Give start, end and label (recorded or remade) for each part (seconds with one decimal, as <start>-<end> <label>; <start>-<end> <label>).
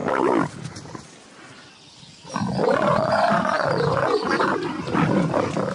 0.0-2.6 recorded; 2.6-4.5 remade; 4.5-5.7 recorded